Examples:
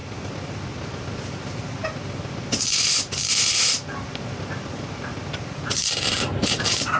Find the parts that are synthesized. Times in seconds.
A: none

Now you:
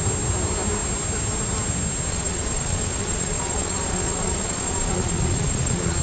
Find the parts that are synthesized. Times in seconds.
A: 2.1-6.0 (vocoder, Vocos)

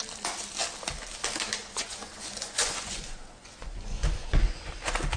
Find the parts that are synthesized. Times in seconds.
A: 1.6-4.7 (vocoder, Vocos)

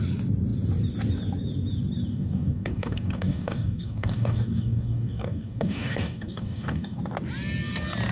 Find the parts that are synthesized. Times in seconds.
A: 2.1-7.0 (codec, DAC)

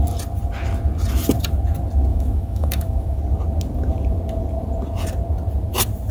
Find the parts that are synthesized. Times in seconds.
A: 2.1-3.2 (autoencoder, DAC-VAE)

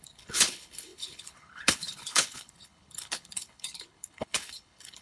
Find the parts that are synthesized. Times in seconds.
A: 0.0-5.0 (codec, HILCodec)

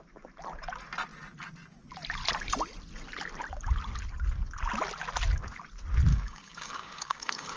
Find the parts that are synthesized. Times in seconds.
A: 6.1-7.6 (codec, DAC)

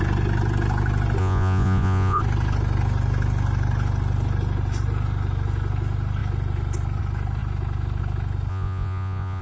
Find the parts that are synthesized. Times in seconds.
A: 1.2-2.2 (vocoder, Vocos); 8.5-9.4